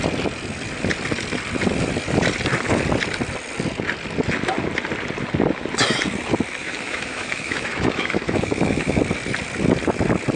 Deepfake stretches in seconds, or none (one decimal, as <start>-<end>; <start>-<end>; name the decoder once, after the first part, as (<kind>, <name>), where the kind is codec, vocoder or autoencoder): 6.6-9.0 (autoencoder, DAC-VAE)